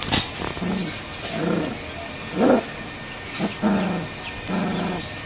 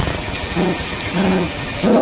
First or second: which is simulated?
second